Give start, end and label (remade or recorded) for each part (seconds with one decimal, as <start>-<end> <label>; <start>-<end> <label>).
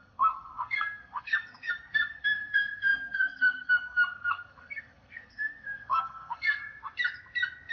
0.0-6.6 remade; 6.6-7.7 recorded